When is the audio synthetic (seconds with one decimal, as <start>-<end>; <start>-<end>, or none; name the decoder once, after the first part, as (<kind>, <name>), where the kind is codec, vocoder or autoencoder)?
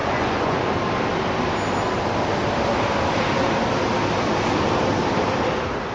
0.0-0.6 (vocoder, Vocos)